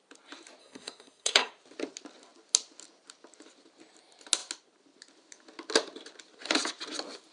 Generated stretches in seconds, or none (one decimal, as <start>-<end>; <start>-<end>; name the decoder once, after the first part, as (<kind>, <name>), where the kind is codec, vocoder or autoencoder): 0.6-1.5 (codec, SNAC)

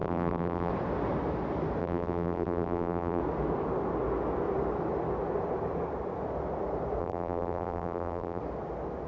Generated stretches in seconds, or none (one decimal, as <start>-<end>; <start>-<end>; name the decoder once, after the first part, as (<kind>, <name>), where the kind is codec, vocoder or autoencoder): 0.0-0.7 (vocoder, BigVGAN v2); 1.8-3.2; 7.0-8.4

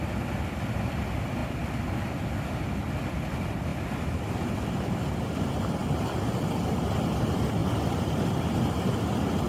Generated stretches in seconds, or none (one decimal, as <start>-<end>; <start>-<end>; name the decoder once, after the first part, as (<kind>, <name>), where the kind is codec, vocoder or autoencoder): none

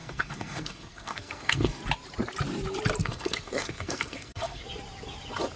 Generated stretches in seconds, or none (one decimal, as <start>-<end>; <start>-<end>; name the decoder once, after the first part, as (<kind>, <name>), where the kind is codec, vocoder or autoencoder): 0.0-1.8 (codec, SNAC); 3.0-4.6

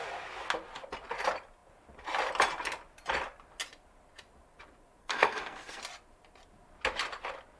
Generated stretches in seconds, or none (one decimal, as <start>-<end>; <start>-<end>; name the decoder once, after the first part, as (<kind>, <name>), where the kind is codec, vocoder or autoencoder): 5.0-5.8 (codec, SNAC)